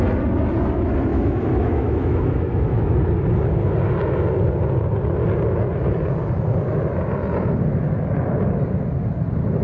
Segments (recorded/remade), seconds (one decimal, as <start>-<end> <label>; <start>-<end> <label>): 0.0-1.1 recorded; 1.1-2.9 remade; 2.9-9.6 recorded